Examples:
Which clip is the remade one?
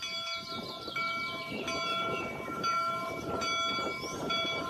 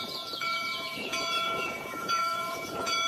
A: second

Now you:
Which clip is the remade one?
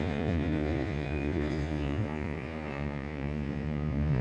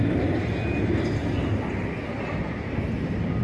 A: first